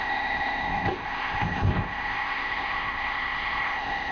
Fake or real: fake